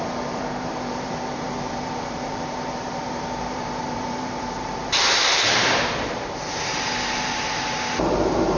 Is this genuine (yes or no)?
no